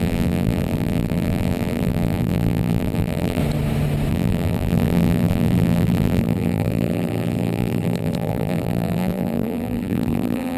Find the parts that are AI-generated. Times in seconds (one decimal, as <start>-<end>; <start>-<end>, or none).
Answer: 0.0-3.4; 4.1-10.6